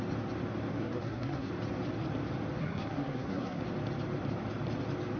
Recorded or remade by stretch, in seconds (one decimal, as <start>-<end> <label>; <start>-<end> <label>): 0.0-0.8 recorded; 0.8-1.5 remade; 1.5-2.6 recorded; 2.6-3.6 remade; 3.6-5.2 recorded